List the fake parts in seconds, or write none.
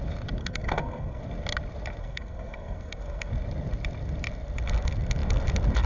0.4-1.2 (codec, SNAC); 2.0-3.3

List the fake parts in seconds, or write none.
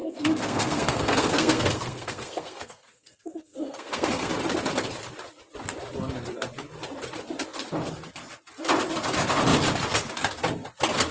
0.0-4.3 (codec, SNAC)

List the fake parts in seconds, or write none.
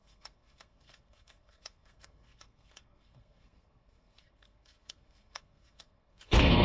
0.0-6.6 (codec, SNAC)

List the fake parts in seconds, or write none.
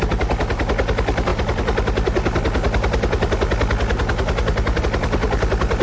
none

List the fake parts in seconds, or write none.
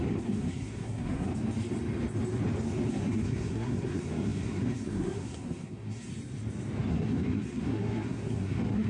0.0-1.3 (codec, SNAC); 2.9-6.1; 6.9-8.9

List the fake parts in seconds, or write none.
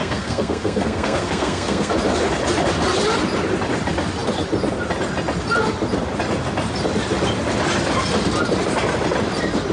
0.0-1.9 (codec, SNAC)